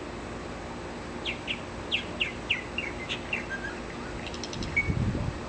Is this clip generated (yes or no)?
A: no